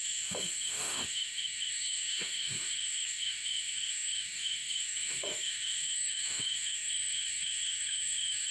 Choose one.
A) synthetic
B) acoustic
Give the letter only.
A